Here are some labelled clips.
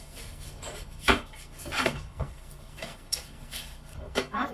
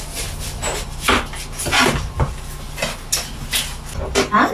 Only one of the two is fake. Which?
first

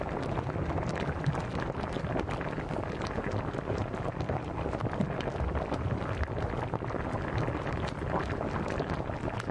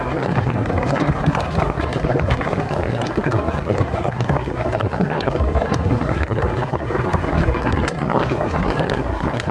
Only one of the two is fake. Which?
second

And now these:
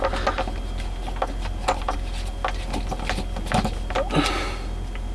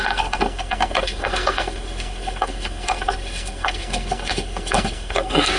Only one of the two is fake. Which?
second